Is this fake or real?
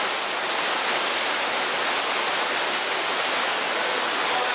real